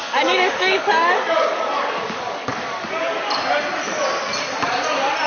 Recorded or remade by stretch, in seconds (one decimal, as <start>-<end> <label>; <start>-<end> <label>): 0.0-3.2 remade; 3.2-5.3 recorded